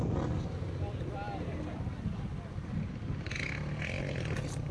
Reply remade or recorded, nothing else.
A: recorded